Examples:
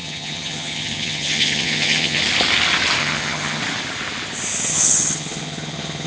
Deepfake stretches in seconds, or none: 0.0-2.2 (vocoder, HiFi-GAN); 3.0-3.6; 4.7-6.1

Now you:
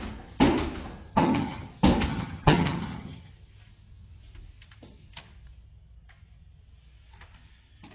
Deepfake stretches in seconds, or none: 1.1-1.7 (vocoder, HiFi-GAN); 2.1-3.3

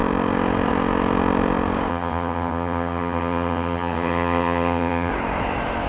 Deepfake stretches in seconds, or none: 1.9-5.1 (vocoder, HiFi-GAN)

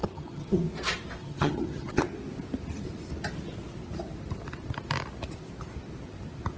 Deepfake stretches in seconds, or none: 0.0-0.6 (vocoder, HiFi-GAN); 1.2-2.0